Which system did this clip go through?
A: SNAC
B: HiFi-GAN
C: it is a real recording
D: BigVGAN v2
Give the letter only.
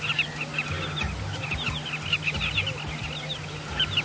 C